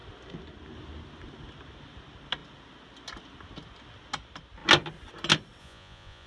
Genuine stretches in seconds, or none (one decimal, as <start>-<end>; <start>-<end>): 0.0-5.6